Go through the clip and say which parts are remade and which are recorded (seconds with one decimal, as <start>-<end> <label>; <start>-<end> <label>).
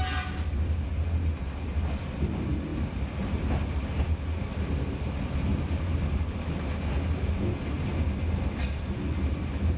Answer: 0.0-2.7 recorded; 2.7-4.0 remade; 4.0-5.5 recorded; 5.5-6.2 remade; 6.2-9.8 recorded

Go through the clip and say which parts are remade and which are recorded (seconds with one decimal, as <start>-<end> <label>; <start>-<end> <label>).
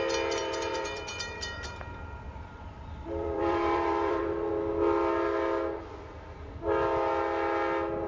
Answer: 0.0-0.4 recorded; 0.4-4.5 remade; 4.5-8.1 recorded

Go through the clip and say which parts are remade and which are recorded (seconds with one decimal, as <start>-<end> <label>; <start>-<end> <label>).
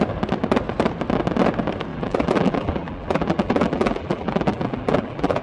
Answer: 0.0-1.9 recorded; 1.9-5.4 remade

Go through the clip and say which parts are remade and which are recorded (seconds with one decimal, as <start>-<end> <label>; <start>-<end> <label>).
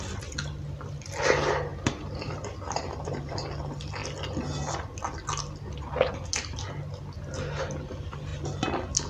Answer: 0.0-1.7 recorded; 1.7-3.4 remade; 3.4-9.1 recorded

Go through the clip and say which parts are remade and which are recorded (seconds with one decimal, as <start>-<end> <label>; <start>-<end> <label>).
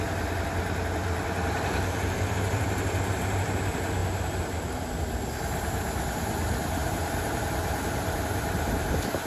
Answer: 0.0-1.0 recorded; 1.0-2.6 remade; 2.6-4.0 recorded; 4.0-4.9 remade; 4.9-9.3 recorded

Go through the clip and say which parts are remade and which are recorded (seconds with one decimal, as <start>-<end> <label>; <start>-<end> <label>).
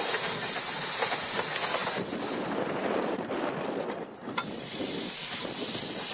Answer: 0.0-6.1 remade